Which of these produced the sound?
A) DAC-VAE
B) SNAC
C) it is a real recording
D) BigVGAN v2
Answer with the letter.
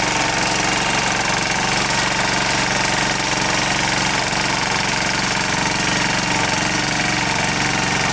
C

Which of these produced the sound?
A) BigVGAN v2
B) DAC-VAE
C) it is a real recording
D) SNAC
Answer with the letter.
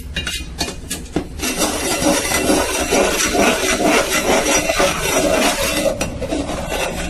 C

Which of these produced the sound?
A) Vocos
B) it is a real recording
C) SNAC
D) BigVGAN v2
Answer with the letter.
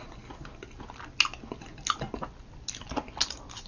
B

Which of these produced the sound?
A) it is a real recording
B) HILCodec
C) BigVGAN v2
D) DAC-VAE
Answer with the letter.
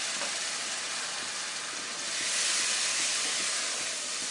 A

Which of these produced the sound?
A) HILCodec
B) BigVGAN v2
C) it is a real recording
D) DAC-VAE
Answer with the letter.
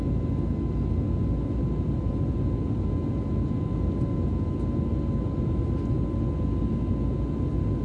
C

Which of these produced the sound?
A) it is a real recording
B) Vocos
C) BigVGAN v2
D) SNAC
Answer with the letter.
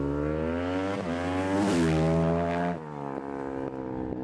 A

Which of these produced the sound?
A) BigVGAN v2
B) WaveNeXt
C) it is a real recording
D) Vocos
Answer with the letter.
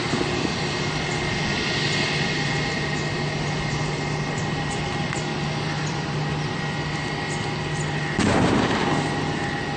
C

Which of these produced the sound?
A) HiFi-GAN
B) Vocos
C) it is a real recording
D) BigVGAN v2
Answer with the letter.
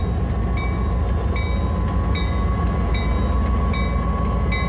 C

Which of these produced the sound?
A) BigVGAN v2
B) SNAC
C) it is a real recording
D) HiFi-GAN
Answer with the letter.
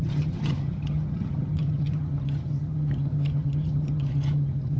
D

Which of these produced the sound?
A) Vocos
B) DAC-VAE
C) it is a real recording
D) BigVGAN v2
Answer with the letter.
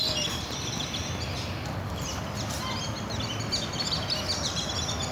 D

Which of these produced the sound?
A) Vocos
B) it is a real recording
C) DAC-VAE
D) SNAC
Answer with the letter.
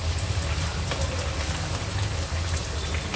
B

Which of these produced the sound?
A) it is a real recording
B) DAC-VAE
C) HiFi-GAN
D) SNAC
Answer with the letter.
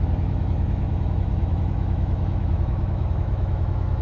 B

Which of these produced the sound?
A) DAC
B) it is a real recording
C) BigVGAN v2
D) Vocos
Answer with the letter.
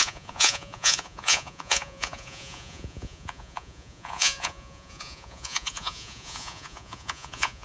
D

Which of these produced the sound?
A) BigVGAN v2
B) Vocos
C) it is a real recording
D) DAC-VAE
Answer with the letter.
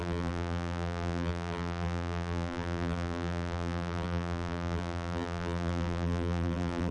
A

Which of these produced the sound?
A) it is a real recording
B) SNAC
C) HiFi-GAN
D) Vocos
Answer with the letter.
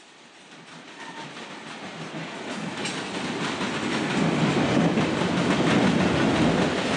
A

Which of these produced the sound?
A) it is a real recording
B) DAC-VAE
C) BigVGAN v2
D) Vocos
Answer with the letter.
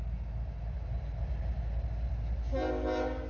A